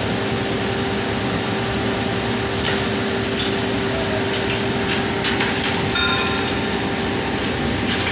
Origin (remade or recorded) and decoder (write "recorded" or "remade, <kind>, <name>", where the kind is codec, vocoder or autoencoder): recorded